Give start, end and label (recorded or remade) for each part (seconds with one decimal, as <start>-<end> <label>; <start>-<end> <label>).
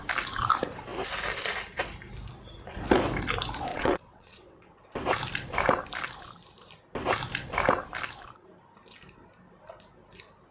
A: 0.0-3.7 recorded; 3.7-4.8 remade; 4.8-10.5 recorded